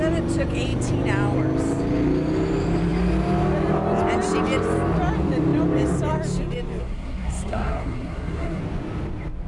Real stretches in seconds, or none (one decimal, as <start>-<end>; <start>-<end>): 0.0-6.8; 8.6-9.5